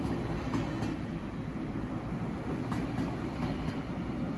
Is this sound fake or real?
real